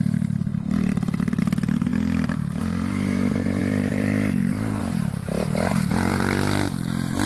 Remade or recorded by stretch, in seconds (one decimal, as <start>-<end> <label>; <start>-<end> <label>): 0.0-7.3 remade